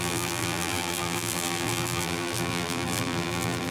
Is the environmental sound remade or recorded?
remade